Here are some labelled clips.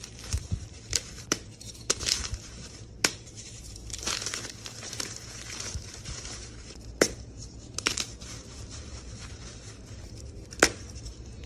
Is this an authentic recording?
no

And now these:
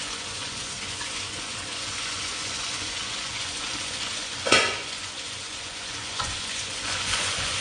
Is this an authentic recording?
no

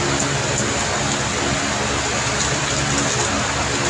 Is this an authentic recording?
yes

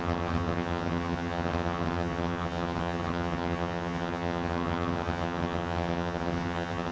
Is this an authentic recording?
no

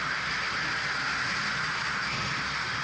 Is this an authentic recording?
yes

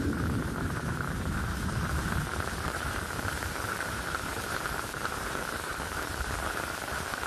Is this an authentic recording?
no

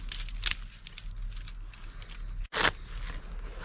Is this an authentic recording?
yes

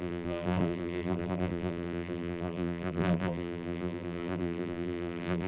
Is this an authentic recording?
no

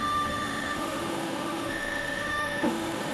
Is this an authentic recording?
no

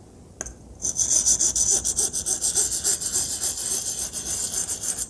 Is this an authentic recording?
yes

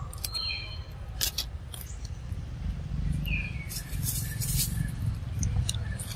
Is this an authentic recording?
yes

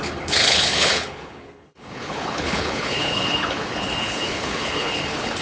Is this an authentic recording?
no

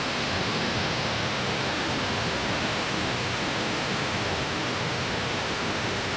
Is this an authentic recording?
no